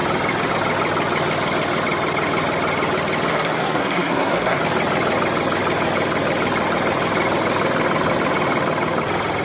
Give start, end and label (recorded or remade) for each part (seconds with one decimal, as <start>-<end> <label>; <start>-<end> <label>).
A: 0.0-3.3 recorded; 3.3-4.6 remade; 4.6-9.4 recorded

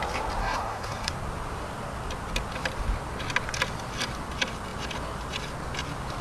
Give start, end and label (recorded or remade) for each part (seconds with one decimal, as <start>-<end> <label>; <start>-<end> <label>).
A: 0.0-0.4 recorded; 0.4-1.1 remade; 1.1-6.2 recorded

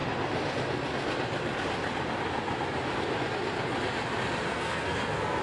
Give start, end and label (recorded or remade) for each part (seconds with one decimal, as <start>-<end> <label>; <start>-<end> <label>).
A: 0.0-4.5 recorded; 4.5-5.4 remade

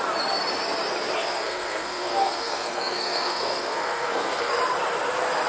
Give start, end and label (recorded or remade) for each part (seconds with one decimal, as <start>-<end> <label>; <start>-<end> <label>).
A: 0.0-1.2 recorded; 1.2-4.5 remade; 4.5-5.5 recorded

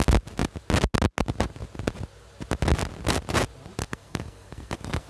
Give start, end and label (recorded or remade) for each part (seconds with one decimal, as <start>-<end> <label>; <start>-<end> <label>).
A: 0.0-3.8 recorded; 3.8-5.1 remade